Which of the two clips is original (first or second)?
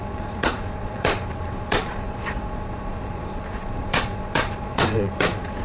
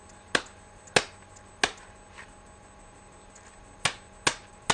second